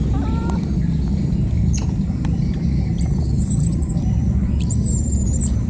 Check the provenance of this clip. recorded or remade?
remade